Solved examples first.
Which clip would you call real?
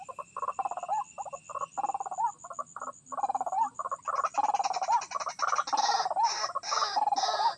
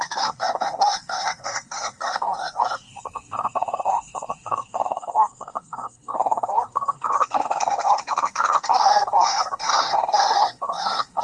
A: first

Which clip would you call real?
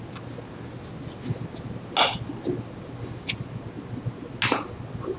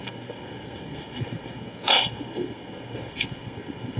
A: first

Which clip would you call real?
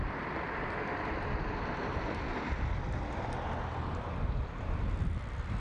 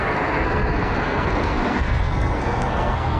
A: first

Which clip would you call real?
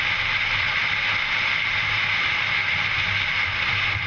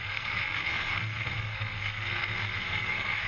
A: first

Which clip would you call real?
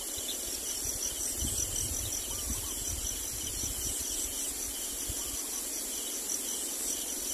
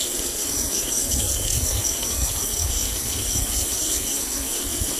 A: first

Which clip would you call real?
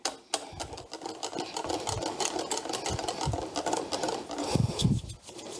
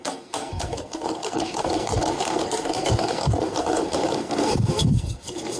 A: first